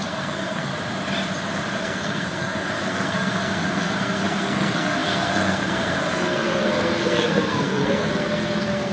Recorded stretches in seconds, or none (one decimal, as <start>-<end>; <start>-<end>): 0.7-1.7